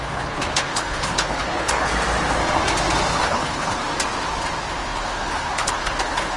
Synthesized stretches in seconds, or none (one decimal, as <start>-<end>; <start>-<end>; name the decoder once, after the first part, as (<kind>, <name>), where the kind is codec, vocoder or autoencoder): 0.0-1.9 (codec, HILCodec); 3.2-3.8; 4.7-6.4